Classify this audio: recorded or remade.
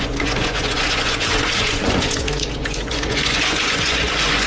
remade